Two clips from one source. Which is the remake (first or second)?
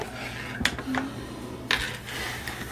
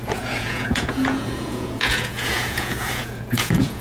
second